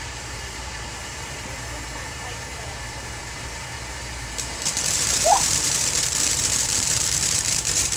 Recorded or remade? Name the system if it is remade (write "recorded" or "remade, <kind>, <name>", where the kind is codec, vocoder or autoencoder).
remade, vocoder, BigVGAN v2